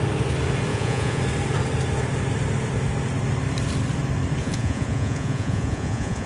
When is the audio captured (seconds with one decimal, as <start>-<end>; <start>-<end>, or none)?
0.0-0.7; 1.2-4.4